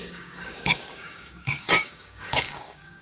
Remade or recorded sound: remade